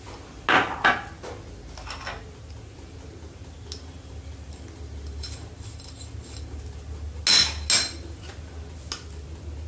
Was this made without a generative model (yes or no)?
yes